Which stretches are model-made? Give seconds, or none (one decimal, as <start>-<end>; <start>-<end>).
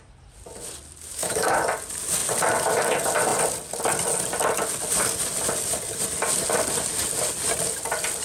1.1-1.6